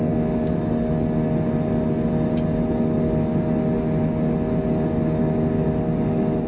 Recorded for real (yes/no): yes